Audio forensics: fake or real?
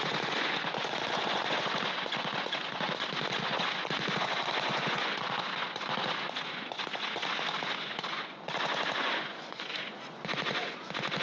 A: fake